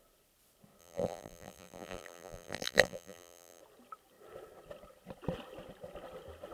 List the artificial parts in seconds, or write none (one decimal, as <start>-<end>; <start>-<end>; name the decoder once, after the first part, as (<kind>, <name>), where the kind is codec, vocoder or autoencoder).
0.8-3.6 (vocoder, BigVGAN v2)